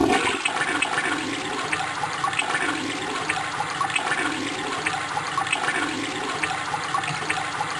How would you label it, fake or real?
real